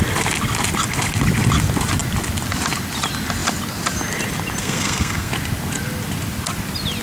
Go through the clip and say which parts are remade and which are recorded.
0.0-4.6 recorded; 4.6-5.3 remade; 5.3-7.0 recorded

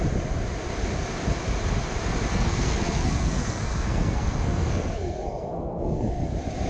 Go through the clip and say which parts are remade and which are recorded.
0.0-2.3 recorded; 2.3-6.3 remade; 6.3-6.7 recorded

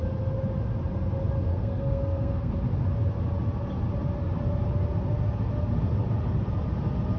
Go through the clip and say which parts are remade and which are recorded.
0.0-1.5 recorded; 1.5-2.5 remade; 2.5-7.2 recorded

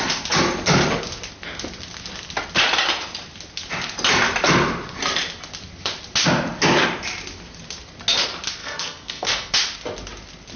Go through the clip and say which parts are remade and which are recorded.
0.0-8.6 recorded; 8.6-9.5 remade; 9.5-10.6 recorded

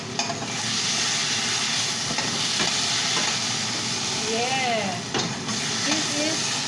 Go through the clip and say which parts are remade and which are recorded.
0.0-6.7 recorded